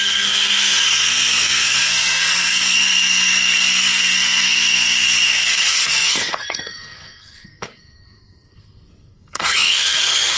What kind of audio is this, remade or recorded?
remade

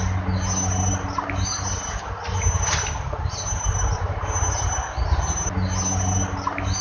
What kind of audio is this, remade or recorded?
recorded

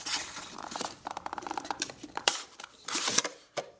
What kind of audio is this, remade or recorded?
remade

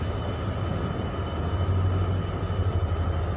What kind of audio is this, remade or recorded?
recorded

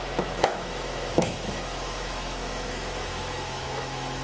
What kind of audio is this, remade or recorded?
remade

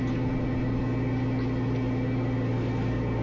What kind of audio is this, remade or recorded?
recorded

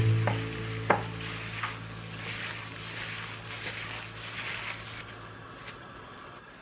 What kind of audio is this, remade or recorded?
recorded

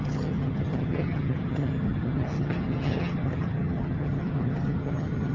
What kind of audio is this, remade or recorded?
remade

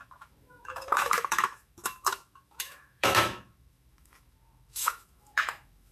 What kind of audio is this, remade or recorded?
remade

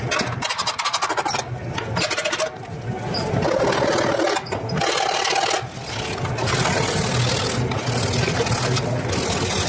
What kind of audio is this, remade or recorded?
recorded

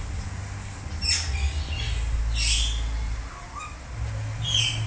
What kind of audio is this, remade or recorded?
recorded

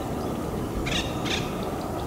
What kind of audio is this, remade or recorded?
recorded